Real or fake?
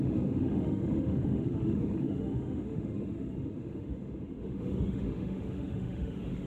fake